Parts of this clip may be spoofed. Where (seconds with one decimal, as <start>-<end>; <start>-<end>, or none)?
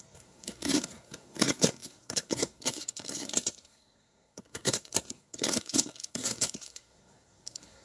0.0-7.8